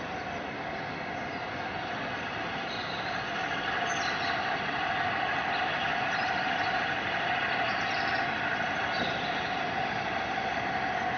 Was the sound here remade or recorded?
recorded